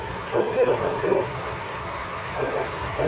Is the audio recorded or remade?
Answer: remade